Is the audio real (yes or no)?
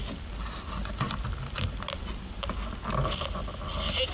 yes